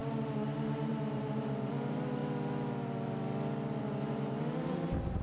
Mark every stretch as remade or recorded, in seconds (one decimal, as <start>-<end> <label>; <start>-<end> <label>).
0.0-0.9 recorded; 0.9-2.2 remade; 2.2-3.8 recorded; 3.8-5.2 remade